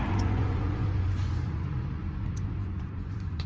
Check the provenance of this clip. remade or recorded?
remade